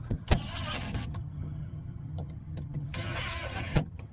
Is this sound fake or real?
fake